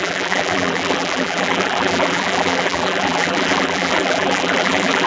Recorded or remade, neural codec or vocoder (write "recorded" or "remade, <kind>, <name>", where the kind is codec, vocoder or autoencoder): remade, vocoder, BigVGAN v2